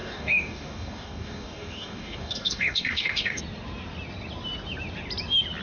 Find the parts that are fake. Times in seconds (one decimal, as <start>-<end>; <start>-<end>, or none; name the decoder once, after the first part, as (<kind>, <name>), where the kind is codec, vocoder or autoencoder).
0.0-3.4 (codec, DAC)